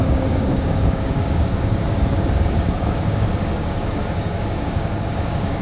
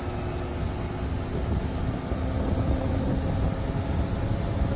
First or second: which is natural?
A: second